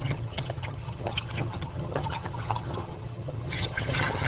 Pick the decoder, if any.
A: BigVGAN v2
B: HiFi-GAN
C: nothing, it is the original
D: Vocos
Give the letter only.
B